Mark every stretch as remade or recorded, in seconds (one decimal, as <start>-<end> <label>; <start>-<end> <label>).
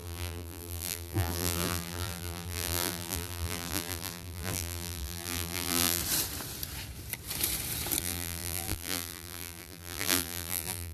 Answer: 0.0-6.0 remade; 6.0-8.0 recorded; 8.0-10.9 remade